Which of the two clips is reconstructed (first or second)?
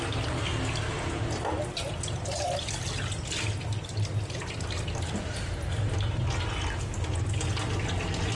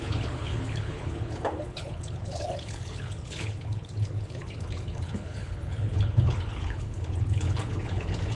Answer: second